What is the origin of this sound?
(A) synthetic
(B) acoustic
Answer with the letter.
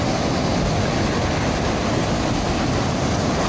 B